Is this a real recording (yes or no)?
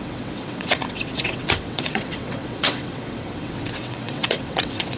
no